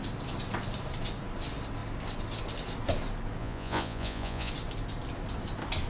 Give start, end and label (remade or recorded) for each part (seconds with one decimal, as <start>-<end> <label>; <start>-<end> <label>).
0.0-3.4 recorded; 3.4-4.5 remade; 4.5-5.9 recorded